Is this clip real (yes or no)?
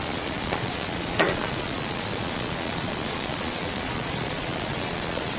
no